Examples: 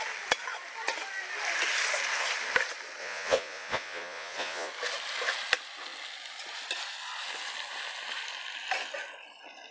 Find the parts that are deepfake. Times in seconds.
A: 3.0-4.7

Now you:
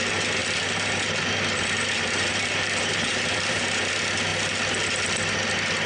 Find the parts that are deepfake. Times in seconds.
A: 0.4-3.9

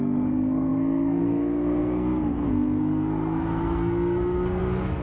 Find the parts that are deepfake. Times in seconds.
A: 0.0-5.0

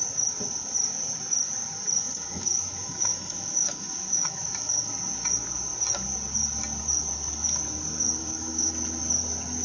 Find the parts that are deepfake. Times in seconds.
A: 2.0-4.9; 8.2-8.7

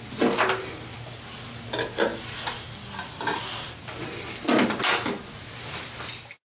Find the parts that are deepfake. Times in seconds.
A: none

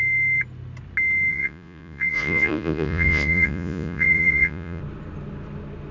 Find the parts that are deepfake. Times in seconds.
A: 1.3-4.8